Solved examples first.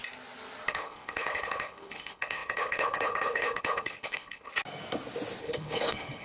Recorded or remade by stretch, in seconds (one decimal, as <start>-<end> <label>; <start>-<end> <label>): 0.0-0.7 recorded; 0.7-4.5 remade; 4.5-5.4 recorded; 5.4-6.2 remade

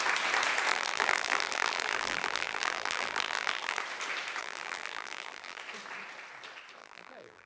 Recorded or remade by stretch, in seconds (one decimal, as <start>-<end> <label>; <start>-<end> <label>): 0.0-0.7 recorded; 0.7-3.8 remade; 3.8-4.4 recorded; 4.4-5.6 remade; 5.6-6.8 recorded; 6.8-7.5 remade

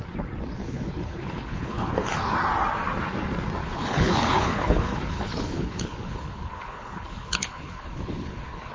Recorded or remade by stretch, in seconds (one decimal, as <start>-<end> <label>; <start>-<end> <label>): 0.0-0.6 recorded; 0.6-2.3 remade; 2.3-3.6 recorded; 3.6-8.7 remade

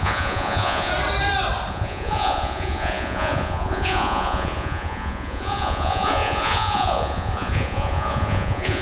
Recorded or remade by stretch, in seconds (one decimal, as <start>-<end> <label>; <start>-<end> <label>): 0.0-0.9 remade; 0.9-1.7 recorded; 1.7-8.8 remade

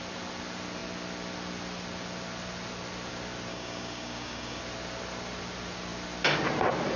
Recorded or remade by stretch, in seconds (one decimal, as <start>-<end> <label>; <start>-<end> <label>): 0.0-3.5 recorded; 3.5-4.6 remade; 4.6-7.0 recorded

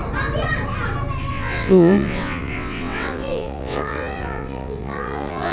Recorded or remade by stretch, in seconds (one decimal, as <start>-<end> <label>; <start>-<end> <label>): 0.0-1.3 recorded; 1.3-5.5 remade